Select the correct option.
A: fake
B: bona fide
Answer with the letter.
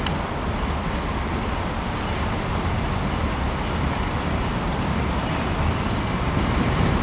B